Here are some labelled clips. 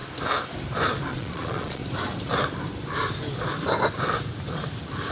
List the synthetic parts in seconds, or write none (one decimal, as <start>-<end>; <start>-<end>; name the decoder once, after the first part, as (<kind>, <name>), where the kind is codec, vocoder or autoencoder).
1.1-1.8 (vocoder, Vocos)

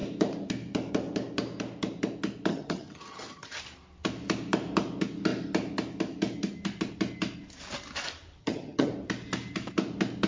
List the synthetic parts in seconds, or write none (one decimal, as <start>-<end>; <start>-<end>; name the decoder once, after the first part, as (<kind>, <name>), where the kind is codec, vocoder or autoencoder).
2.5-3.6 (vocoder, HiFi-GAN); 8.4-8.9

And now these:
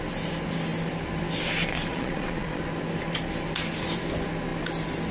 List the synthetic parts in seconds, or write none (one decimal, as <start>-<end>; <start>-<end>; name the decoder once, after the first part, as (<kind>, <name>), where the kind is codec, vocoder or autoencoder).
1.9-2.6 (vocoder, Vocos)

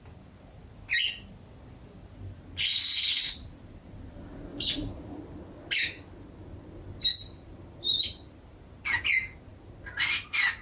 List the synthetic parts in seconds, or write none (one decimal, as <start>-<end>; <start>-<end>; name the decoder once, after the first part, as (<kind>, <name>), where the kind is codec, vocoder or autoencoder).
4.5-5.2 (vocoder, Vocos)

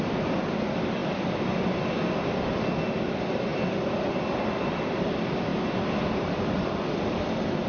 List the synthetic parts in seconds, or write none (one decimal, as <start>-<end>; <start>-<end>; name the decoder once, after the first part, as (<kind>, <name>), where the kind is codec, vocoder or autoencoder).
1.0-1.9 (vocoder, BigVGAN v2); 3.5-5.1; 5.5-6.8